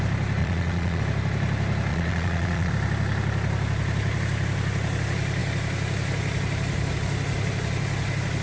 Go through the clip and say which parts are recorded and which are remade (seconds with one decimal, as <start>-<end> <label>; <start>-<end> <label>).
0.0-0.4 recorded; 0.4-1.0 remade; 1.0-1.9 recorded; 1.9-2.7 remade; 2.7-8.4 recorded